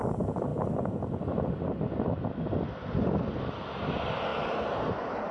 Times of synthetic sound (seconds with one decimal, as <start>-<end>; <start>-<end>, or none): 0.5-2.3; 4.3-5.3